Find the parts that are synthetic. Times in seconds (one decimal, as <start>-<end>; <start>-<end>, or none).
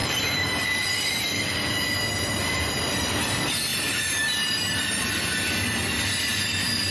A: 0.0-1.4; 3.7-5.1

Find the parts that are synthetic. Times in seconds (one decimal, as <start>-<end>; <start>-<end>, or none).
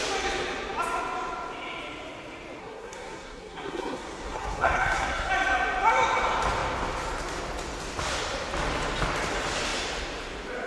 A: 2.6-5.3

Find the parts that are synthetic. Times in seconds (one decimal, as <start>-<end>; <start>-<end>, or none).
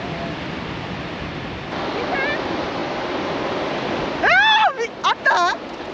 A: none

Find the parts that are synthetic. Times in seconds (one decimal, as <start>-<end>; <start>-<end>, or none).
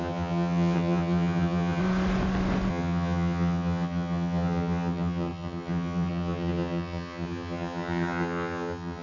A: 0.0-1.8; 2.7-9.0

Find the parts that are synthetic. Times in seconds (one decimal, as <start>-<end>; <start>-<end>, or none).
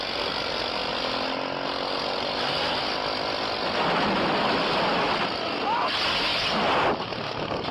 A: none